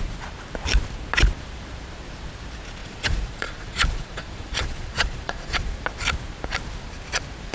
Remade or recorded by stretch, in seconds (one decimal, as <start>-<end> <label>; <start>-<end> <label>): 0.0-2.8 recorded; 2.8-5.7 remade; 5.7-7.5 recorded